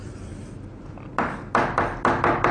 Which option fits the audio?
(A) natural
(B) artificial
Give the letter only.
A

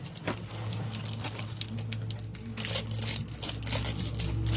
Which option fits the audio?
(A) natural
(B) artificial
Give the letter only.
A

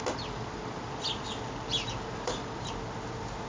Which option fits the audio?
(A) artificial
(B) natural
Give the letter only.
B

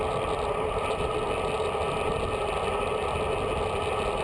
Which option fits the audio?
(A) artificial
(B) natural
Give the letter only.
B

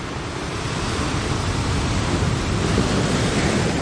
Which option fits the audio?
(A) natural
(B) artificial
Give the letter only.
A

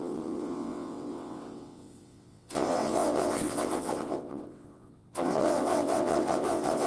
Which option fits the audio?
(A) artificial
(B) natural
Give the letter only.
A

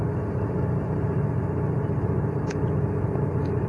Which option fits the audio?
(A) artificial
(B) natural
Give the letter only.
B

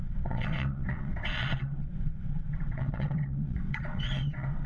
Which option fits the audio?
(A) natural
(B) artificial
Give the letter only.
B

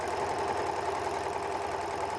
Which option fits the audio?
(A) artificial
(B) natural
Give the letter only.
B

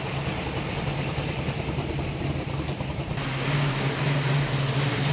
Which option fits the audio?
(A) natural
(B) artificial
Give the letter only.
A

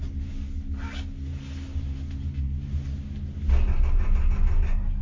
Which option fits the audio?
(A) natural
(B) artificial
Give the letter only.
A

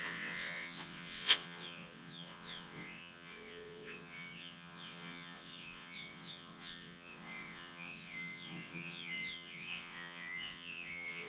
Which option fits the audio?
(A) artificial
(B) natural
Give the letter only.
A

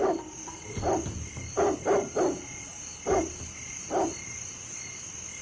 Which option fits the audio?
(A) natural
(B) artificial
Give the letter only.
A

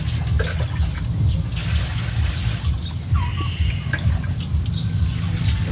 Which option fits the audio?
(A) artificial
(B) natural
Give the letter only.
B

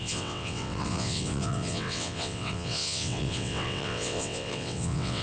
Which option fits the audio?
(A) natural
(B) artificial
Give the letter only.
B